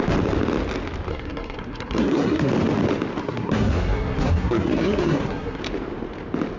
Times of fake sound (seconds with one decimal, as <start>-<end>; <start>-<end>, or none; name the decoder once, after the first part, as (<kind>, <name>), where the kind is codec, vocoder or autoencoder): 1.1-2.5 (codec, SNAC); 3.2-5.6